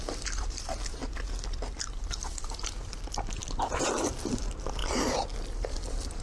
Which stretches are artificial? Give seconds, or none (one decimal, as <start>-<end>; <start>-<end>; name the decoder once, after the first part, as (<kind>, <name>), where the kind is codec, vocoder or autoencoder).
0.0-1.0 (vocoder, BigVGAN v2); 1.8-4.8; 5.4-6.2